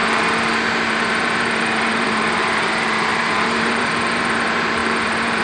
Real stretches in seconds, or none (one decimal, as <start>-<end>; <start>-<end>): 0.0-0.9

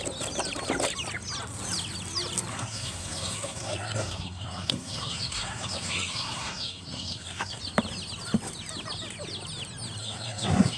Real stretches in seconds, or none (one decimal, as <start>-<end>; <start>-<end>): 0.0-2.5; 7.6-10.0

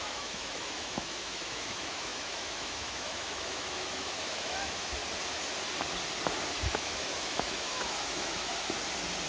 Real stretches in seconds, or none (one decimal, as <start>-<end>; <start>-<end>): 5.0-6.7; 8.5-9.3

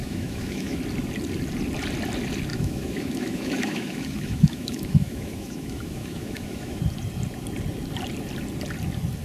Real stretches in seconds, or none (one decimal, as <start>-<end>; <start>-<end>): 0.8-2.5; 6.8-9.2

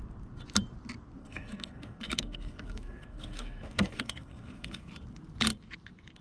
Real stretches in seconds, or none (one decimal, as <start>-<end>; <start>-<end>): 0.0-1.2; 4.9-6.2

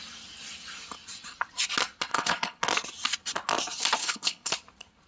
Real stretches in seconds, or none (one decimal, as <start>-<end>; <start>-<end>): 0.0-2.1; 2.6-4.0; 4.5-5.1

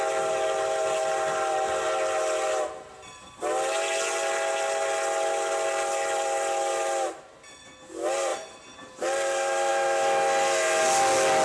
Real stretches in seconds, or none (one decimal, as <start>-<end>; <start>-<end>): 0.0-11.4

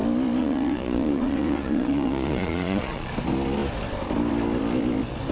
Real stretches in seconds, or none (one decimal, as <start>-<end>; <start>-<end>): 0.0-0.4; 3.1-5.3